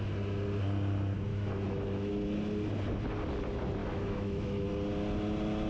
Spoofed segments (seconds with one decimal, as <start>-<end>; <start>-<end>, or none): 1.3-2.1; 3.8-4.7